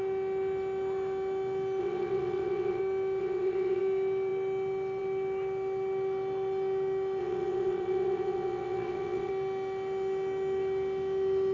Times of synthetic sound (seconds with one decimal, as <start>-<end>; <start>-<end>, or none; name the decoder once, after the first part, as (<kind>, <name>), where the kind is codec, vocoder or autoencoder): 1.8-2.8 (vocoder, WaveNeXt); 3.2-3.8; 7.2-9.3